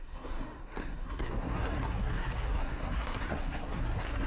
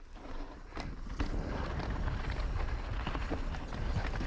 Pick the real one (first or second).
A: second